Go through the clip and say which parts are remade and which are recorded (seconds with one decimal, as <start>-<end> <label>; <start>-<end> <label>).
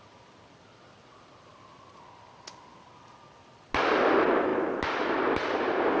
0.0-6.0 recorded